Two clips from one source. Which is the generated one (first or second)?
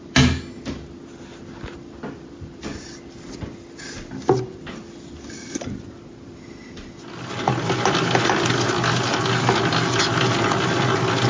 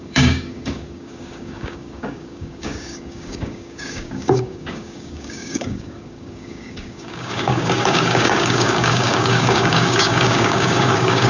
second